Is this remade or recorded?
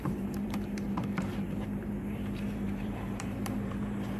remade